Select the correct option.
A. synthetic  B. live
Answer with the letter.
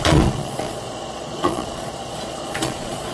A